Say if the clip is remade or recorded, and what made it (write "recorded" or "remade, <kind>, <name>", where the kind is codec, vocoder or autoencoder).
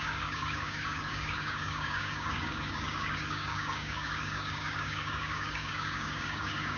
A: remade, codec, DAC